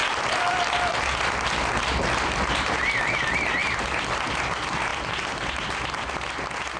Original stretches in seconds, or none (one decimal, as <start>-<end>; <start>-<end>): 0.0-6.8